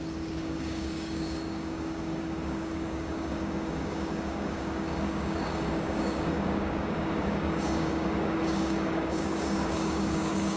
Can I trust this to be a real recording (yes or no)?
no